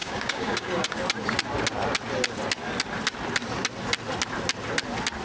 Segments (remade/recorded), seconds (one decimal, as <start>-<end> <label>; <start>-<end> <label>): 0.0-1.0 remade; 1.0-5.2 recorded